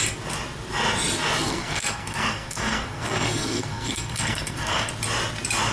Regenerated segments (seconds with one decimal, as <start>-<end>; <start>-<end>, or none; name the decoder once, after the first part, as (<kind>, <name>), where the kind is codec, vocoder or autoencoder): 1.5-4.9 (codec, SNAC)